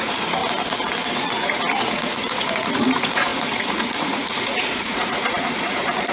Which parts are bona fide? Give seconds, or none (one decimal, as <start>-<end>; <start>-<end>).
0.4-1.1